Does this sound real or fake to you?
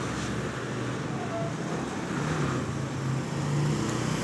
real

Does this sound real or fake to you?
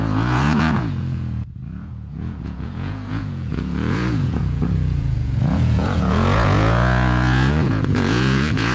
fake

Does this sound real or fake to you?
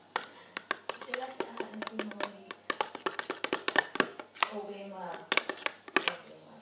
real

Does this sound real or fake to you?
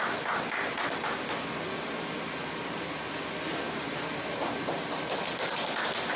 real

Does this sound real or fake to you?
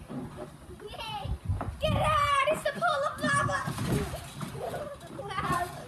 real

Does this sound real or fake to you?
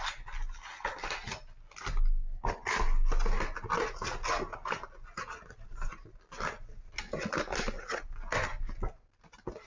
real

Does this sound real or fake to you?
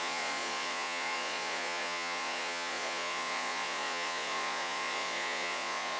fake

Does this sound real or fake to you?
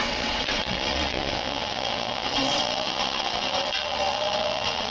fake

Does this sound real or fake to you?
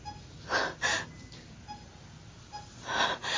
real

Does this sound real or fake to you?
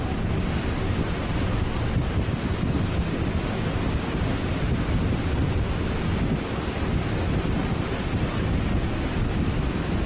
real